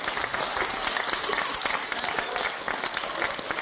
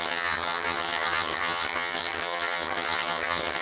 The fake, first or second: second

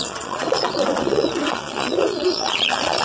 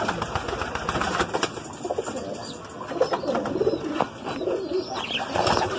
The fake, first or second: first